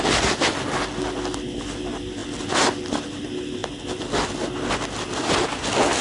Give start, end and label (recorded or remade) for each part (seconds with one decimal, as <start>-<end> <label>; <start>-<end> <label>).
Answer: 0.0-6.0 recorded